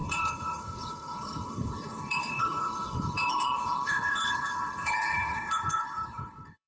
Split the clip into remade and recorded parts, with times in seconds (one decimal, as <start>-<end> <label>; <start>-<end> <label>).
0.0-6.7 remade